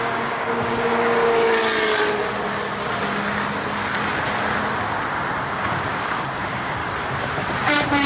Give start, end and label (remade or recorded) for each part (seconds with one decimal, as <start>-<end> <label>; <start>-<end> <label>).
0.0-1.6 remade; 1.6-5.5 recorded; 5.5-6.8 remade; 6.8-8.1 recorded